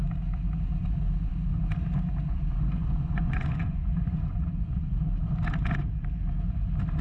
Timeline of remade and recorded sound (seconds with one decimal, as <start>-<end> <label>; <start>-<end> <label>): 0.0-2.2 recorded; 2.2-5.0 remade; 5.0-7.0 recorded